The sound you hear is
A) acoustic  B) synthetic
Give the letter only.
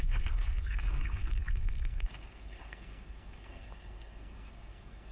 B